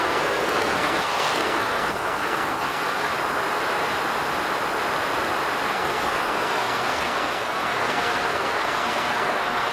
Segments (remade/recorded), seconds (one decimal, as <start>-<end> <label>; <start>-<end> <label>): 0.0-3.1 remade; 3.1-5.7 recorded; 5.7-9.7 remade